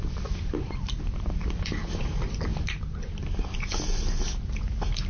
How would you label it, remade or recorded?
recorded